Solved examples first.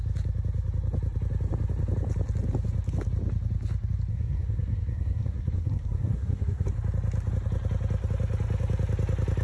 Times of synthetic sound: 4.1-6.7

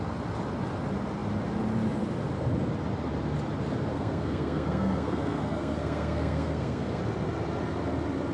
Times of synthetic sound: 3.9-7.0

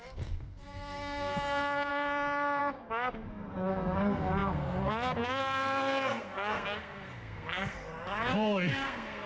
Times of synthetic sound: 0.0-1.9; 2.6-9.3